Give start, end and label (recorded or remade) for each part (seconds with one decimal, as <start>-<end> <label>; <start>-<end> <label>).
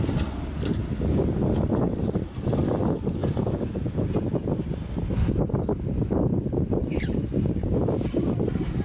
0.0-3.2 recorded; 3.2-4.0 remade; 4.0-8.8 recorded